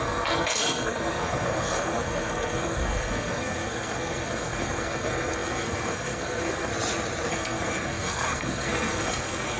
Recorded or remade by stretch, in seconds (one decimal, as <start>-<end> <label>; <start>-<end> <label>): 0.0-6.7 remade; 6.7-7.3 recorded; 7.3-9.6 remade